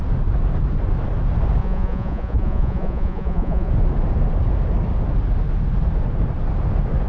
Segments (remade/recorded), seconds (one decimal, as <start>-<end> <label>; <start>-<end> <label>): 0.0-1.6 recorded; 1.6-3.7 remade; 3.7-7.1 recorded